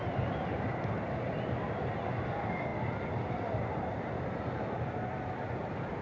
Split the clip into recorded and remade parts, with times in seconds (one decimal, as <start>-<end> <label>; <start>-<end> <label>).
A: 0.0-6.0 recorded